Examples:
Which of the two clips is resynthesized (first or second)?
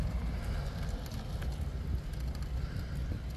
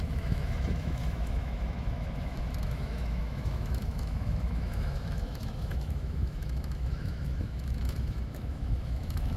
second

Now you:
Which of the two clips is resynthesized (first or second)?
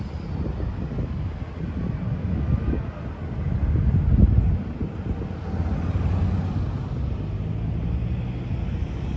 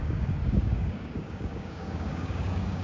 second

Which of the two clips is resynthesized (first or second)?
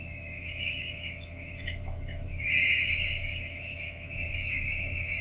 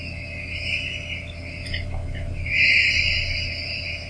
first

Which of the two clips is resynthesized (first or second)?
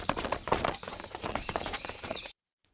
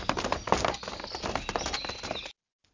first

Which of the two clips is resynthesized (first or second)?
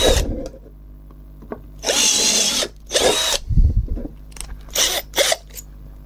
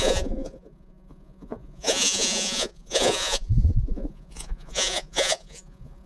second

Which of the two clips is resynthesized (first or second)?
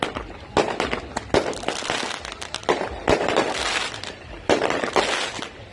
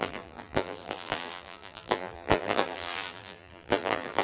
second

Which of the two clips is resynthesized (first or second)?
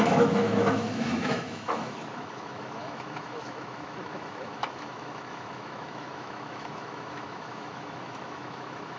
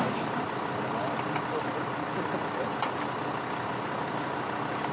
first